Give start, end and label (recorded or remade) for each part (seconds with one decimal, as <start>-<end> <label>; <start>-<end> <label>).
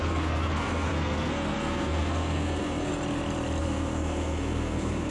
0.0-2.9 remade; 2.9-3.6 recorded; 3.6-5.1 remade